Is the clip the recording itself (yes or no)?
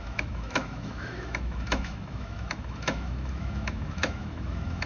no